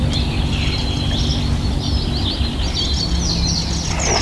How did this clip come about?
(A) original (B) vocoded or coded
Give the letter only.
A